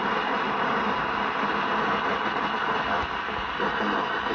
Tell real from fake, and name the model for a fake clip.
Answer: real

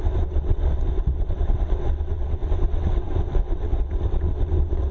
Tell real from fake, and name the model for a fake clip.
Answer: fake, vocoder, WaveNeXt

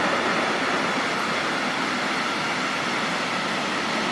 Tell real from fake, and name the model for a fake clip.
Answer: real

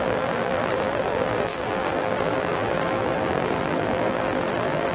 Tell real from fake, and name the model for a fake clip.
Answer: fake, vocoder, BigVGAN v2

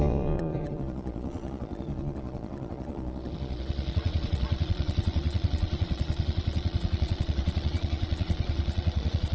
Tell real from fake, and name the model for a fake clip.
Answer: fake, vocoder, Vocos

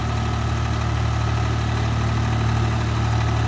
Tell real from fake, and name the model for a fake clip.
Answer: real